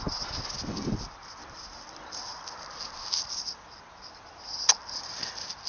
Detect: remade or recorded recorded